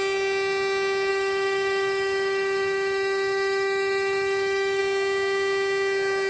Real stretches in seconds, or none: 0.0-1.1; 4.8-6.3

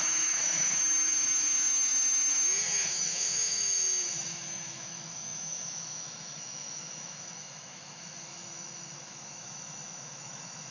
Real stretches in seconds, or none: none

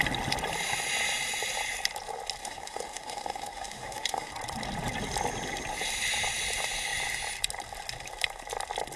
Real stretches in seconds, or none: 0.0-2.4; 4.3-9.0

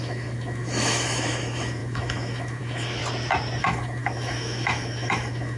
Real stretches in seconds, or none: 3.0-3.6

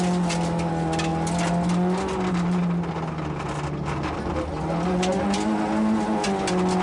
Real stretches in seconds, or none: 0.0-6.8